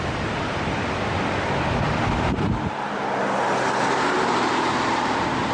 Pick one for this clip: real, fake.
real